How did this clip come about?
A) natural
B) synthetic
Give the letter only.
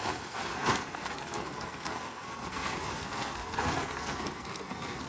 B